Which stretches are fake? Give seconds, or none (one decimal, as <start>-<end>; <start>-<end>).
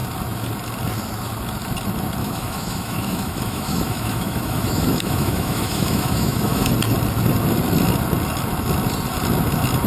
2.2-6.7